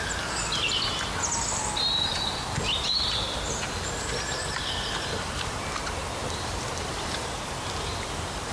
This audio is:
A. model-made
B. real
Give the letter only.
B